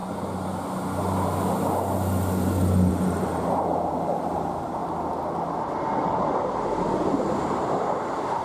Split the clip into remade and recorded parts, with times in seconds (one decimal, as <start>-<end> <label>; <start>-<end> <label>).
0.0-2.9 recorded; 2.9-4.8 remade; 4.8-7.1 recorded; 7.1-8.4 remade